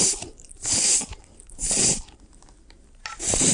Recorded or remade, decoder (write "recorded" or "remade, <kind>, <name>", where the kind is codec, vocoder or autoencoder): remade, vocoder, BigVGAN v2